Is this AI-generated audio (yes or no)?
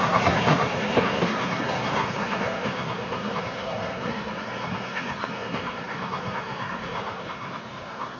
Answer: yes